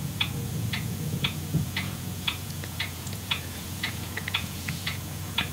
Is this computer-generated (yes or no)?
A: yes